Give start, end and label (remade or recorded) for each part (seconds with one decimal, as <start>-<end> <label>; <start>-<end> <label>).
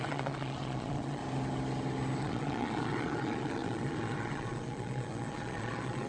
0.0-1.2 remade; 1.2-2.2 recorded; 2.2-6.1 remade